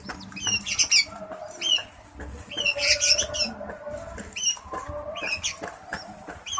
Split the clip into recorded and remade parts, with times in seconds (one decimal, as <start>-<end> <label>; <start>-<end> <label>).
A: 0.0-6.6 recorded